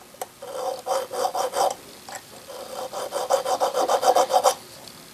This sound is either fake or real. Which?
real